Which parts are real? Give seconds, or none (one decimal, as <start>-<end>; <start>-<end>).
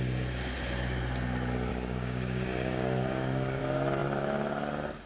0.0-1.7; 3.6-5.1